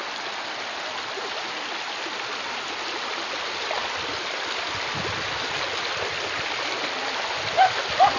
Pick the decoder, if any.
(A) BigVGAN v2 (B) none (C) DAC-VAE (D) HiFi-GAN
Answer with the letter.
B